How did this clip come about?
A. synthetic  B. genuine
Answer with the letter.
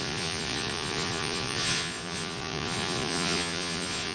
A